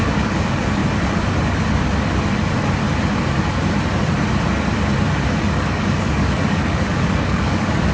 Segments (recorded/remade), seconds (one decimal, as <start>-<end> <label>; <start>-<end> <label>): 0.0-0.8 remade; 0.8-5.5 recorded; 5.5-7.9 remade